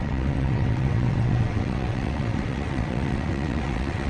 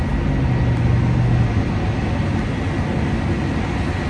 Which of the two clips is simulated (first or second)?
first